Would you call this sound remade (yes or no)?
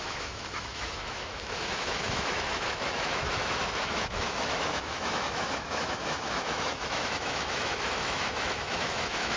yes